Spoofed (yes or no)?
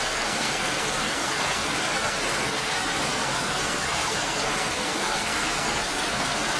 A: yes